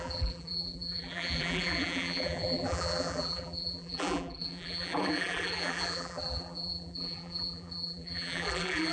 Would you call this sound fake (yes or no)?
yes